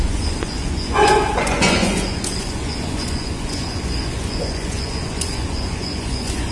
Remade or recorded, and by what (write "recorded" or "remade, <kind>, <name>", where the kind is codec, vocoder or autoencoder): remade, vocoder, Vocos